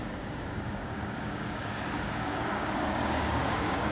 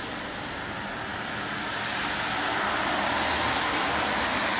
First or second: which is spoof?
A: first